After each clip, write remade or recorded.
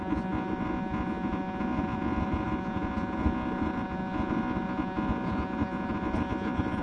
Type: remade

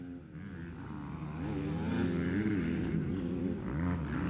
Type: recorded